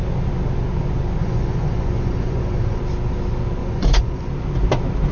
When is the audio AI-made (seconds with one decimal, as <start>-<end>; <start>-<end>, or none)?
1.2-2.8; 3.6-4.3